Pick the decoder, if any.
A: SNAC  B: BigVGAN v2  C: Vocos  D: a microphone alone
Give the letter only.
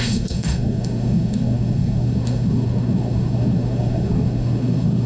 A